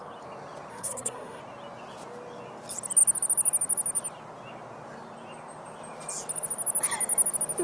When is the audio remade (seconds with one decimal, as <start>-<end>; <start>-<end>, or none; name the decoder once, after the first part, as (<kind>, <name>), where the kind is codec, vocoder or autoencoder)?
0.7-1.4 (codec, SNAC)